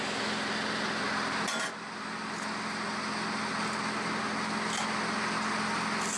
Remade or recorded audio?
recorded